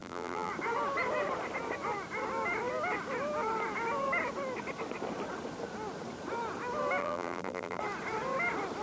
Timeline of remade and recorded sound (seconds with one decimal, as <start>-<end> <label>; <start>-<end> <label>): 0.0-0.5 remade; 0.5-7.0 recorded; 7.0-7.8 remade; 7.8-8.8 recorded

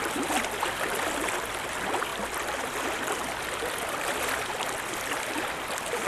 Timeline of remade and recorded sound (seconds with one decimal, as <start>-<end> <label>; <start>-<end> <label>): 0.0-2.1 remade; 2.1-3.9 recorded; 3.9-6.1 remade

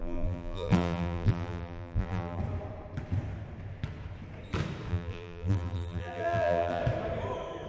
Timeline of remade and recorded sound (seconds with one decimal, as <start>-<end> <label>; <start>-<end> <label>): 0.0-2.4 remade; 2.4-4.9 recorded; 4.9-6.8 remade; 6.8-7.7 recorded

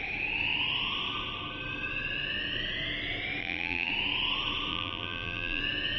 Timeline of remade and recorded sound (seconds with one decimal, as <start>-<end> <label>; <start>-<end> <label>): 0.0-3.4 recorded; 3.4-3.9 remade; 3.9-4.7 recorded; 4.7-5.6 remade; 5.6-6.0 recorded

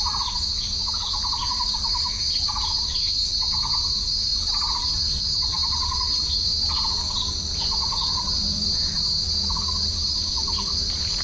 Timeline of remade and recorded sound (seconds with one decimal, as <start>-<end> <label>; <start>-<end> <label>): 0.0-0.8 remade; 0.8-1.3 recorded; 1.3-11.2 remade

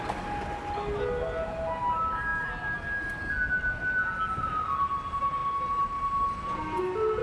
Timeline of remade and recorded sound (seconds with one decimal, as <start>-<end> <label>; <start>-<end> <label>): 0.0-7.2 recorded

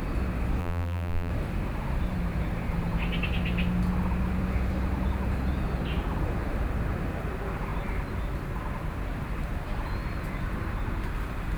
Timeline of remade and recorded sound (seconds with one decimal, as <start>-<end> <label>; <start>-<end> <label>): 0.0-0.6 recorded; 0.6-1.3 remade; 1.3-11.6 recorded